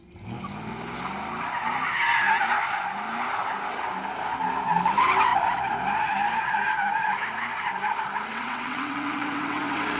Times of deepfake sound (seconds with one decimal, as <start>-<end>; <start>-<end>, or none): 8.3-10.0